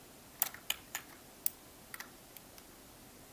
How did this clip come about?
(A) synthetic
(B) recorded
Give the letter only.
B